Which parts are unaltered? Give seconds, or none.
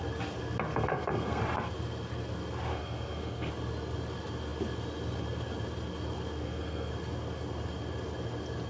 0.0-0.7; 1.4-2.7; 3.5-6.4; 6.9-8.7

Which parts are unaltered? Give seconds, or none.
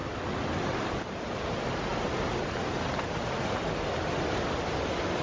0.0-5.2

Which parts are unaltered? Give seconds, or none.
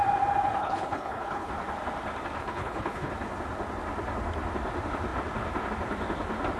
0.0-0.6; 1.5-2.4; 3.1-6.6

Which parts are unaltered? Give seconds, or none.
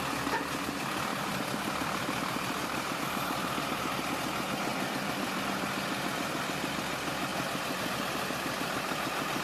0.0-1.1; 3.0-4.7; 5.4-7.3; 7.9-9.4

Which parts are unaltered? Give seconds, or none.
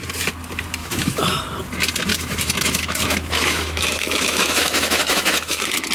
0.0-0.8; 1.4-2.1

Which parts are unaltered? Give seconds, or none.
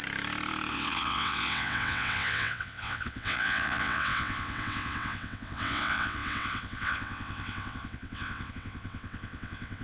0.0-0.7